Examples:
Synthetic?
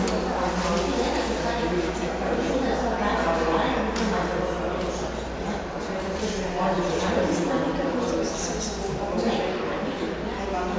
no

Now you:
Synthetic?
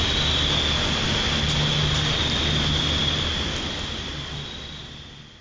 no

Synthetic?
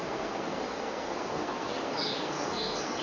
yes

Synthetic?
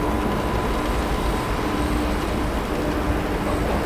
no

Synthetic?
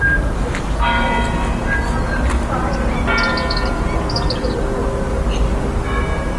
no